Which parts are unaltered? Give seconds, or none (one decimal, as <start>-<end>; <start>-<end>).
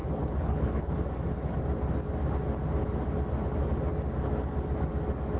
0.9-5.4